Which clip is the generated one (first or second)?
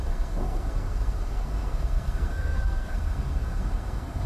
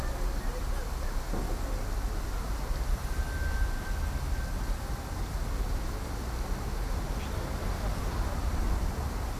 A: first